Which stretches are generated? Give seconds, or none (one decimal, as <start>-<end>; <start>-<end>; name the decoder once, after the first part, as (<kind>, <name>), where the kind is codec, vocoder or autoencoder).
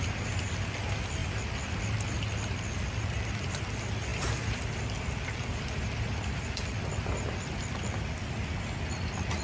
1.2-1.7 (vocoder, BigVGAN v2); 4.1-7.5